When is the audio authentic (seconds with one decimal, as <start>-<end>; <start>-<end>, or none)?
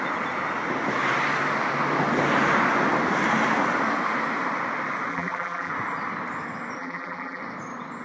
0.0-5.1; 5.7-6.8; 7.4-8.0